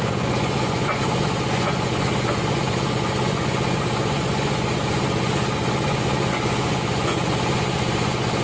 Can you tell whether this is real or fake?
fake